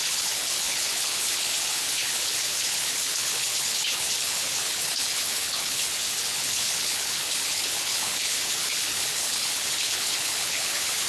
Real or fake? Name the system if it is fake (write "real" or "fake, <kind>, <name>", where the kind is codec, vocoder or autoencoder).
fake, codec, HILCodec